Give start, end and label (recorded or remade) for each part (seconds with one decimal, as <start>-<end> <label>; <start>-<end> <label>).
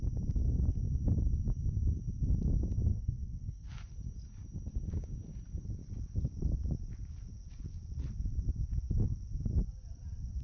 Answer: 0.0-2.9 recorded; 2.9-3.7 remade; 3.7-10.4 recorded